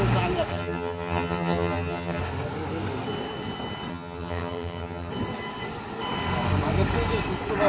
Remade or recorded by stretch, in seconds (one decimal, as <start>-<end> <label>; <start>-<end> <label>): 0.0-0.5 recorded; 0.5-2.2 remade; 2.2-3.9 recorded; 3.9-5.1 remade; 5.1-7.7 recorded